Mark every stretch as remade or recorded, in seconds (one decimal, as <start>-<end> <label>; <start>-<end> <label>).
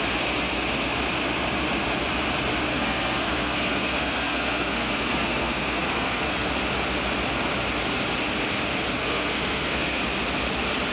0.0-2.7 recorded; 2.7-6.5 remade; 6.5-9.0 recorded; 9.0-10.0 remade; 10.0-10.9 recorded